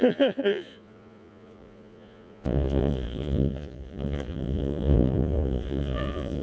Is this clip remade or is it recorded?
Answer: remade